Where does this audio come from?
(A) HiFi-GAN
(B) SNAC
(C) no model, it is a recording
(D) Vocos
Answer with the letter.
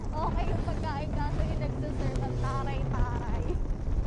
C